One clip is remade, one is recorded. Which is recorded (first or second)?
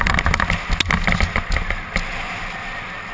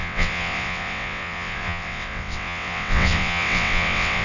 first